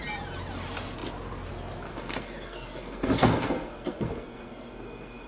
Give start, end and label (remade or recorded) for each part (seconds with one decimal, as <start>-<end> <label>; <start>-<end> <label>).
0.0-1.9 recorded; 1.9-5.3 remade